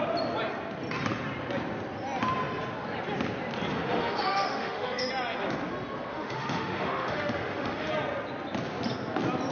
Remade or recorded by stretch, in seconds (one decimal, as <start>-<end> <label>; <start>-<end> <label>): 0.0-3.7 recorded; 3.7-5.1 remade; 5.1-6.1 recorded; 6.1-7.9 remade; 7.9-9.5 recorded